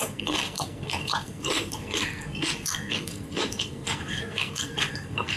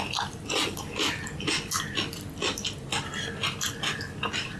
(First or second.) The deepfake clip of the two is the first